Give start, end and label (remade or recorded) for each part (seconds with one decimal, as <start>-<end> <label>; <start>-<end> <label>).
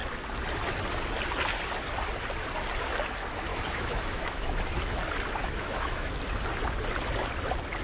0.0-3.5 recorded; 3.5-5.0 remade; 5.0-5.4 recorded; 5.4-6.1 remade; 6.1-7.8 recorded